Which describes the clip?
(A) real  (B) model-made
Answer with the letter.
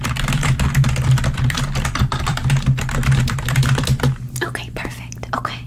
B